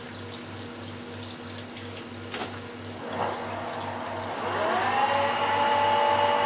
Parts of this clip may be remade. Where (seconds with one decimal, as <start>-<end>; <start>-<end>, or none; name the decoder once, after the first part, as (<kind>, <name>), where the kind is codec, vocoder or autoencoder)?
none